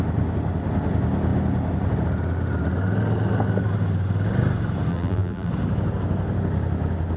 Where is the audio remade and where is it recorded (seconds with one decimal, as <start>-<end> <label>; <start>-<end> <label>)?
0.0-4.9 recorded; 4.9-5.5 remade; 5.5-7.2 recorded